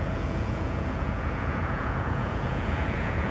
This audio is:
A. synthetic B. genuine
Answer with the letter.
A